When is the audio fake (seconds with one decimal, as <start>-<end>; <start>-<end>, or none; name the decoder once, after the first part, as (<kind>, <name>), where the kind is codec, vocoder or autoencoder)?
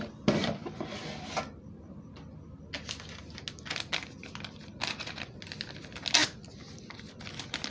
none